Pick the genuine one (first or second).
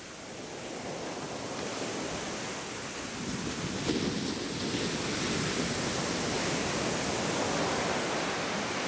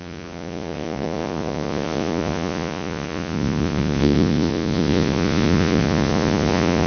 first